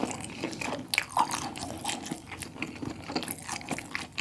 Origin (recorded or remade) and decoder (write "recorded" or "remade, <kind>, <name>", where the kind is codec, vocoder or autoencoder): recorded